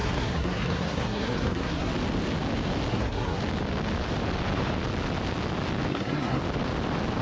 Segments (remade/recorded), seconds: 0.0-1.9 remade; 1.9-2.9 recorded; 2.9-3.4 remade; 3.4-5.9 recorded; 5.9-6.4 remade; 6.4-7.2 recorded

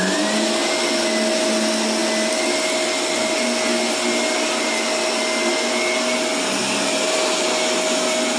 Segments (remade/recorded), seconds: 0.0-8.4 recorded

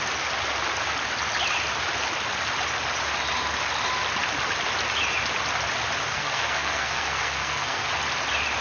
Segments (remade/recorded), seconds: 0.0-6.1 recorded; 6.1-7.9 remade; 7.9-8.6 recorded

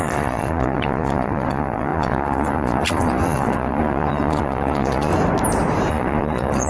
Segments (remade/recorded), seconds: 0.0-5.1 remade; 5.1-5.9 recorded; 5.9-6.7 remade